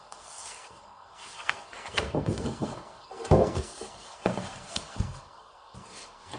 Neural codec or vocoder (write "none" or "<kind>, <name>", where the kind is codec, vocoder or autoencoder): codec, SNAC